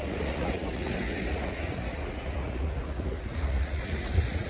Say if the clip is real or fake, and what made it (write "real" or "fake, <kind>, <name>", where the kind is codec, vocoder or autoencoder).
fake, vocoder, Vocos